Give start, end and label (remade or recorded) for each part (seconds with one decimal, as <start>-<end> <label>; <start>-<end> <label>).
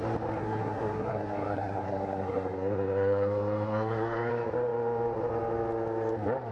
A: 0.0-0.4 recorded; 0.4-4.3 remade; 4.3-6.5 recorded